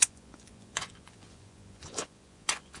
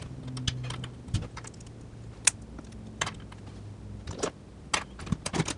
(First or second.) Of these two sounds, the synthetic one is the first